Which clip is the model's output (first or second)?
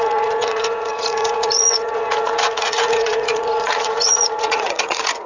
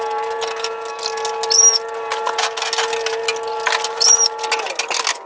first